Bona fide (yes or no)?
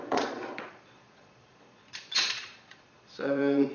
no